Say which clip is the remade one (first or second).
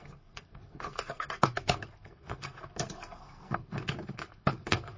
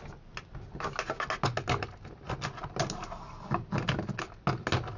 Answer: first